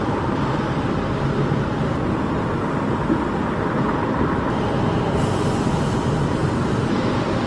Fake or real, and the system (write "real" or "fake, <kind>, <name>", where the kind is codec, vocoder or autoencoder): fake, vocoder, BigVGAN v2